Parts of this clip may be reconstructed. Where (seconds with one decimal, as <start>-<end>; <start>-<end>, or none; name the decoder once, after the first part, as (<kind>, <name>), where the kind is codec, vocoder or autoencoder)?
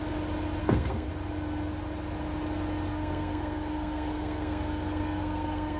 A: 0.6-1.1 (codec, SNAC); 2.9-5.8